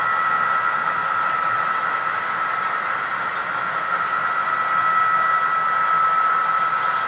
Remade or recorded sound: recorded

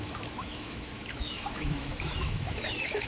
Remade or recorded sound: remade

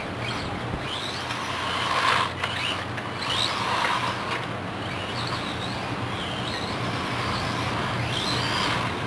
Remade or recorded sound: recorded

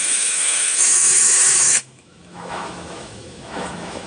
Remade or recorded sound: remade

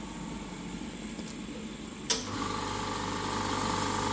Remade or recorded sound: recorded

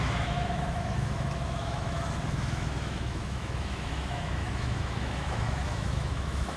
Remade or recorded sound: remade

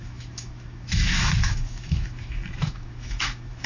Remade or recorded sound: remade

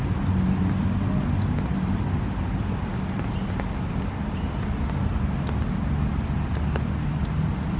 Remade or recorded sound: recorded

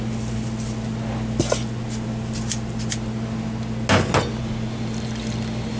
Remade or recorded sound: recorded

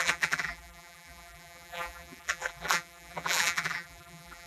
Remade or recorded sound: remade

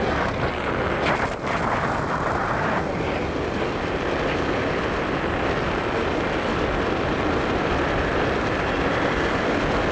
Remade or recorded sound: recorded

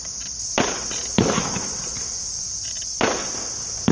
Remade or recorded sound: remade